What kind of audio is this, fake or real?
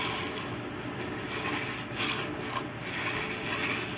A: real